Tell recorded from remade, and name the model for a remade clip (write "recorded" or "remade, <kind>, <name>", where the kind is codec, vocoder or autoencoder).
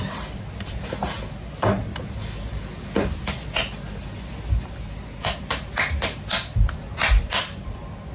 recorded